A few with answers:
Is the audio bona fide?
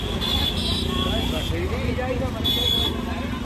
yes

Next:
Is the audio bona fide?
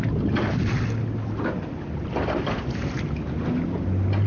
yes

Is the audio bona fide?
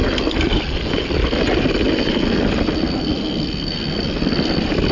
yes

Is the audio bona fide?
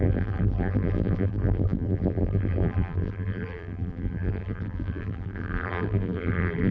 no